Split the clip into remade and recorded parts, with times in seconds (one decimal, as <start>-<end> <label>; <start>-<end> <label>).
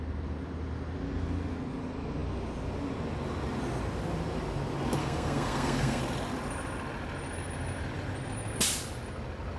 0.0-5.0 recorded; 5.0-6.0 remade; 6.0-9.6 recorded